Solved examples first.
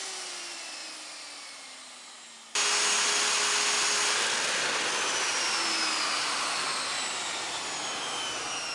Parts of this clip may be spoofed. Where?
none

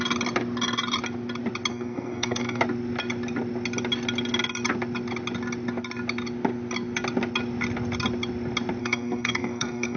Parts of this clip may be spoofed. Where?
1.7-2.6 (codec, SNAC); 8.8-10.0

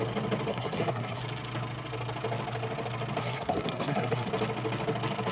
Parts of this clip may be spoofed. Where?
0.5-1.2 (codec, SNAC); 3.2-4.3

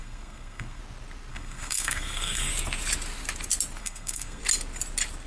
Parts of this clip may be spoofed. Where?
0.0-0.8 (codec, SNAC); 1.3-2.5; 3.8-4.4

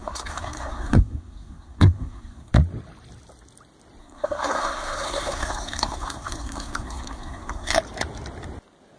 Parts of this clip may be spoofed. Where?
0.0-2.5 (codec, SNAC); 4.0-7.8

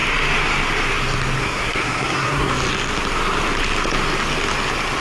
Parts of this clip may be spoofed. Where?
1.4-2.5 (codec, SNAC)

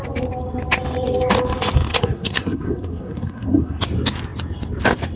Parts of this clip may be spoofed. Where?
1.9-3.8 (codec, SNAC)